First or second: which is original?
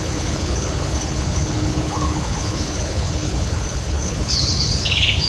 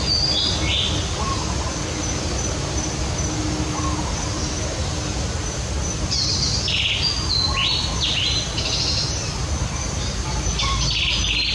second